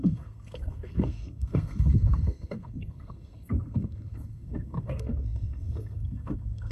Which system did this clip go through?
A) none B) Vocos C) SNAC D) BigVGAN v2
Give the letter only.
C